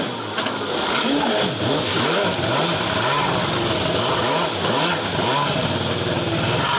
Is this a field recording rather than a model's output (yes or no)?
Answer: yes